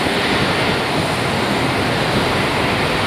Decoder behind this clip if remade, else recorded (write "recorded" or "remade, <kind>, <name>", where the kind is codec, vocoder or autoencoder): recorded